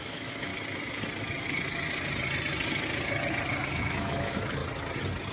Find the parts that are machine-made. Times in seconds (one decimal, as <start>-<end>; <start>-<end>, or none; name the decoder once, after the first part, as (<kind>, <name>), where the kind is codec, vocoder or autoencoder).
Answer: 0.0-0.5 (autoencoder, DAC-VAE); 3.7-4.6